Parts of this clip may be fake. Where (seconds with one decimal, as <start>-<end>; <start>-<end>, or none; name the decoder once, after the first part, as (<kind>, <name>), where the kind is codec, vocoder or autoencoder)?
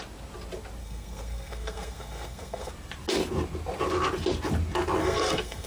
0.8-2.7 (codec, SNAC); 5.0-5.7